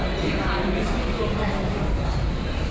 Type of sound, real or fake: real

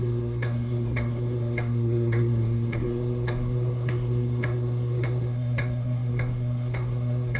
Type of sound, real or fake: fake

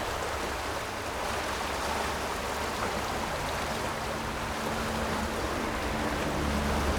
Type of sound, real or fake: real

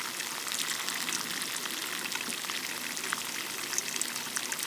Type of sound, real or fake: real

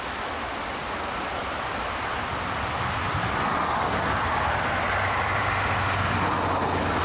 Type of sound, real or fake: real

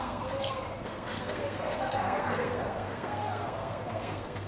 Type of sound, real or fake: fake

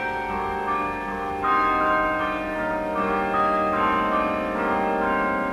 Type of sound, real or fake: real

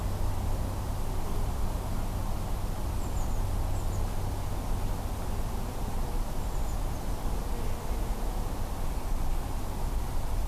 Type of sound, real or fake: real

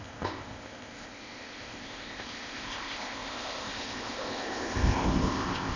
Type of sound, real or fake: fake